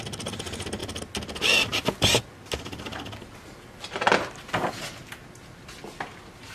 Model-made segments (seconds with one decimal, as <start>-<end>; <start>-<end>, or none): none